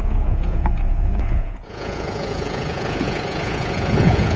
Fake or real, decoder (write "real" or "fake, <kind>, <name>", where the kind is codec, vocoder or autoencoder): fake, vocoder, Vocos